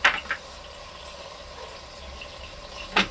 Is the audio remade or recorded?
recorded